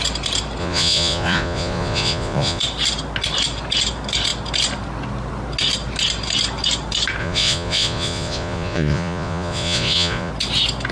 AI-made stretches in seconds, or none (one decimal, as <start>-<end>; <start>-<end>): 0.6-2.6; 7.2-10.3